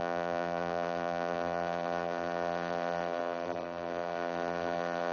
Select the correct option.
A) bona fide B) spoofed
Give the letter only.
B